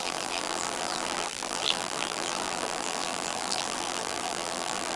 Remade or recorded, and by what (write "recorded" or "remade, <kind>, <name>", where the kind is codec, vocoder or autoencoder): remade, vocoder, BigVGAN v2